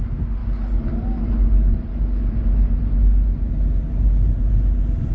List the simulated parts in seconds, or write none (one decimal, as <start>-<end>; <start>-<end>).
none